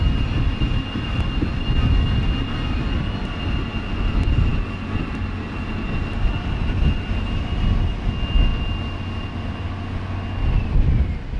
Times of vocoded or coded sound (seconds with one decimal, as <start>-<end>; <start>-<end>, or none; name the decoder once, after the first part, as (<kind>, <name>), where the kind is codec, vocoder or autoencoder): none